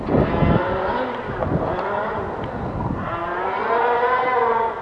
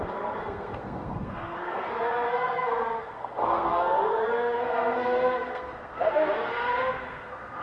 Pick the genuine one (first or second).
first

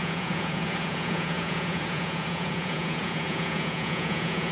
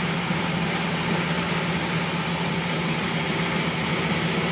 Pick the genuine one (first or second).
second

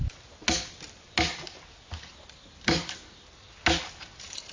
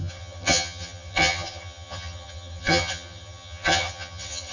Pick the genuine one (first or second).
first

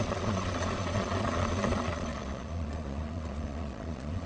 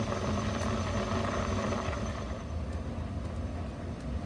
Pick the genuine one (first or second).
second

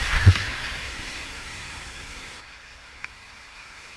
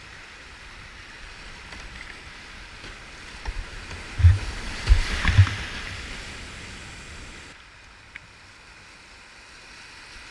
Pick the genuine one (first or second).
second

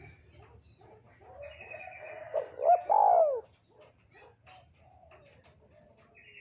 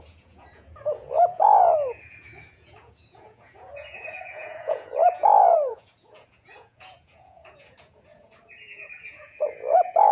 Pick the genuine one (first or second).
first